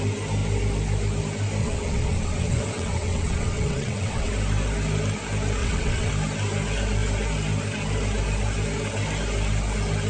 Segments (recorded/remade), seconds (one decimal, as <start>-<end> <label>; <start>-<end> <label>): 0.0-1.6 recorded; 1.6-4.3 remade; 4.3-5.6 recorded; 5.6-6.1 remade; 6.1-10.1 recorded